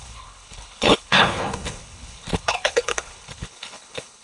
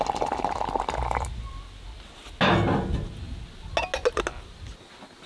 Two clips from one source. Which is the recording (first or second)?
second